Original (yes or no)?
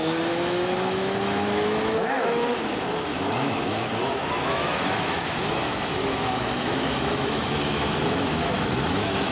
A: no